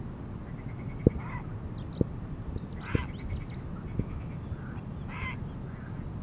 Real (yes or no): yes